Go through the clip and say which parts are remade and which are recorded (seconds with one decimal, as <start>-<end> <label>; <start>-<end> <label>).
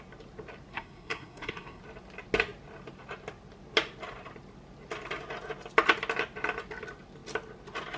0.0-0.7 recorded; 0.7-1.8 remade; 1.8-8.0 recorded